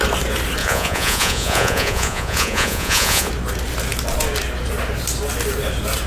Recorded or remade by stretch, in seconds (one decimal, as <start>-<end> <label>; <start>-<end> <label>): 0.0-0.6 recorded; 0.6-3.3 remade; 3.3-6.1 recorded